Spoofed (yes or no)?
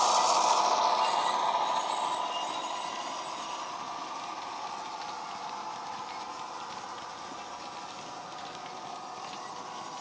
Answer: no